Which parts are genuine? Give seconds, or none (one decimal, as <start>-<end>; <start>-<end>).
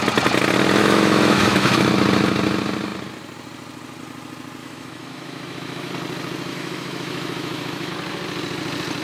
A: 0.0-0.8; 1.9-4.6; 5.9-6.5; 7.9-9.0